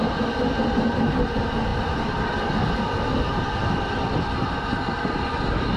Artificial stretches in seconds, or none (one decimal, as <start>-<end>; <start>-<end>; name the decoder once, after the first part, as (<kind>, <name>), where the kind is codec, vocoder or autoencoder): none